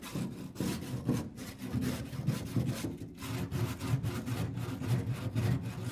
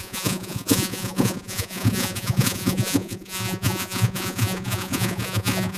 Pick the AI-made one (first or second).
second